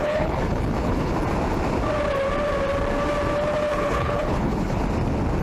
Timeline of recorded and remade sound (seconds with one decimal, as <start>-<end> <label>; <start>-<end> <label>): 0.0-1.1 remade; 1.1-3.7 recorded; 3.7-4.8 remade; 4.8-5.4 recorded